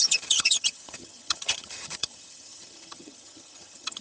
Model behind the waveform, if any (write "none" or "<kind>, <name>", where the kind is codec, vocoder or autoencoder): vocoder, HiFi-GAN